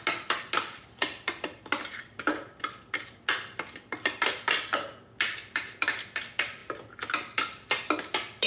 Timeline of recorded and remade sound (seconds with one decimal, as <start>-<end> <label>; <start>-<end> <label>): 0.0-8.5 recorded